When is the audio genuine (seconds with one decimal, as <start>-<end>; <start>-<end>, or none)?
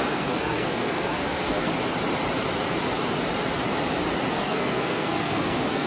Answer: 1.7-4.3